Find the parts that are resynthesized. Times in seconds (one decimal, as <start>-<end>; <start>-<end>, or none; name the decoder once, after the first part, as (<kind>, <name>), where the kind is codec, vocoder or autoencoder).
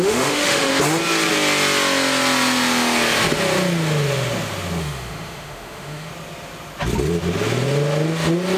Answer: 0.0-0.7 (autoencoder, DAC-VAE); 4.8-6.1